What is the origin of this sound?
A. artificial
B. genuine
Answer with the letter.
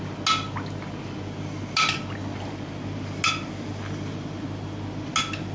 B